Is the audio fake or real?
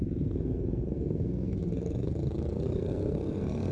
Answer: fake